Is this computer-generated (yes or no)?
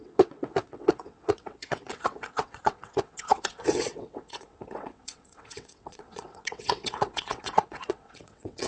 yes